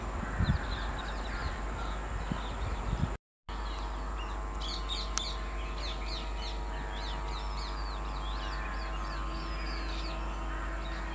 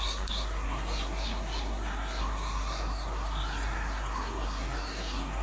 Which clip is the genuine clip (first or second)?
first